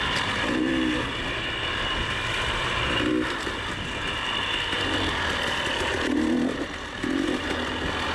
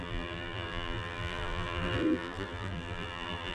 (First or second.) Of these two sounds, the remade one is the second